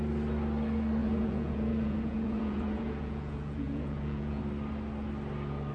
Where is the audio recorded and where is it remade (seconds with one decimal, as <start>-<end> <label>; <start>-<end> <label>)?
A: 0.0-1.0 recorded; 1.0-4.4 remade; 4.4-5.7 recorded